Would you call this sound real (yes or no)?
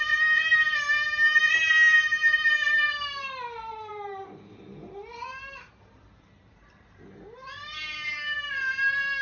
no